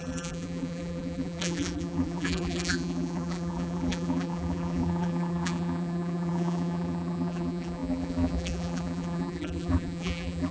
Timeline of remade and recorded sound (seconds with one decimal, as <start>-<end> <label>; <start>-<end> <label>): 0.0-10.5 remade